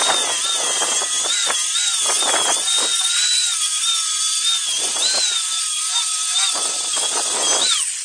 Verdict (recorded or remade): recorded